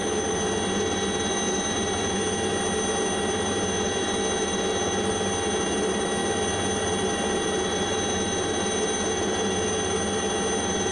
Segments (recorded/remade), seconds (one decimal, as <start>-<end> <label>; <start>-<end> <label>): 0.0-10.9 recorded